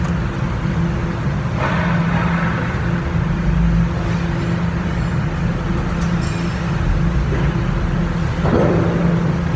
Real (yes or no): yes